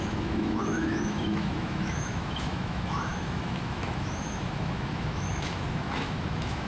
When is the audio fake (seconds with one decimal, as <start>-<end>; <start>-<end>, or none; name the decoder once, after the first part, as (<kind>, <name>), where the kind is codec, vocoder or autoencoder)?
0.0-6.7 (autoencoder, DAC-VAE)